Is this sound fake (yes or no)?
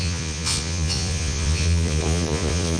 yes